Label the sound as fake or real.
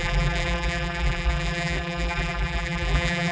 fake